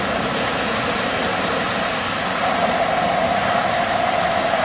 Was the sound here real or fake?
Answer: real